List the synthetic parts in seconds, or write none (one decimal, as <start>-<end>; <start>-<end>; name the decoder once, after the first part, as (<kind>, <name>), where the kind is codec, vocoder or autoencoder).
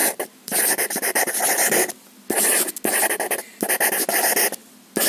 0.0-1.3 (vocoder, BigVGAN v2)